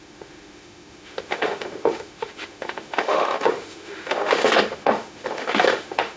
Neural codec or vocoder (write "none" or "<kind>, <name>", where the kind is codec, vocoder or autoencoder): autoencoder, DAC-VAE